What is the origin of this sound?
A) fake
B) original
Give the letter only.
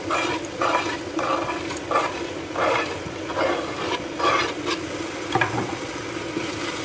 B